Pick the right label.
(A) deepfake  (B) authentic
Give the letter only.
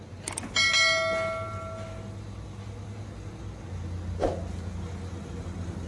B